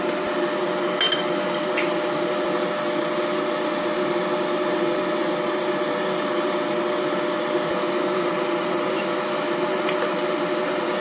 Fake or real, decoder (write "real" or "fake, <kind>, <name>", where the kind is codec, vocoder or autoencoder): real